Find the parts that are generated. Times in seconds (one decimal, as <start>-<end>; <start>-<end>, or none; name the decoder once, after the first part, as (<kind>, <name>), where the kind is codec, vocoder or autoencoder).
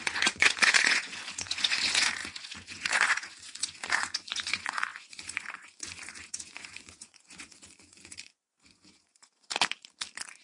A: 0.0-9.5 (vocoder, Vocos)